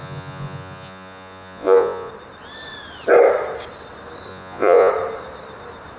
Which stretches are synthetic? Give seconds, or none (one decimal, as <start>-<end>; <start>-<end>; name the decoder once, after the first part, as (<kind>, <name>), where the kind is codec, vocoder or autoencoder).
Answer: 0.0-2.1 (vocoder, Vocos); 4.3-4.9